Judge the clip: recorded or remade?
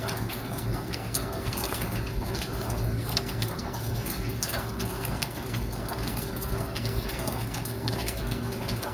remade